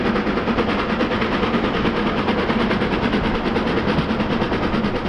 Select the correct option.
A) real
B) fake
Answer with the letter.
A